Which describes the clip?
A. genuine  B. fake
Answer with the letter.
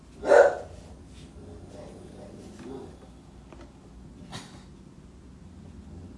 A